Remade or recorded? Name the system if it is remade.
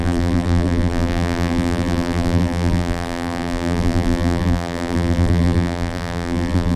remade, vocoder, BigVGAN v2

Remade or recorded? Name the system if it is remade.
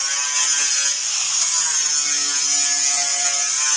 recorded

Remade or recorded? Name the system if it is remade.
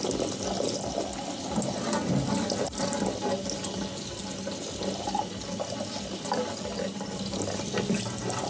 recorded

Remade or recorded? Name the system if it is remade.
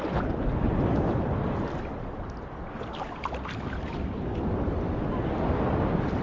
remade, vocoder, BigVGAN v2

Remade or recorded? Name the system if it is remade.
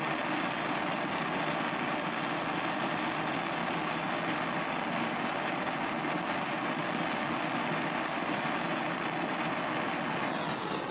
recorded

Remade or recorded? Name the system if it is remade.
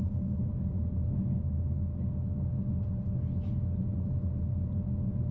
recorded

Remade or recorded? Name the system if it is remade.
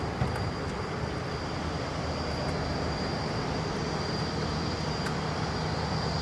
recorded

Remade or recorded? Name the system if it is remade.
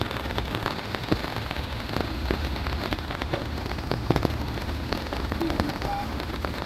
remade, autoencoder, DAC-VAE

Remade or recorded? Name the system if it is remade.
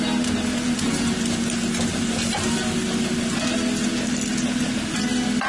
recorded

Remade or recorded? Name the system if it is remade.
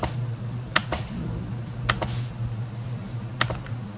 recorded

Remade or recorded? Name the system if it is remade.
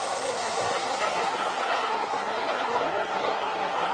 remade, codec, SNAC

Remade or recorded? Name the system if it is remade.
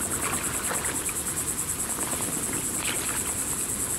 recorded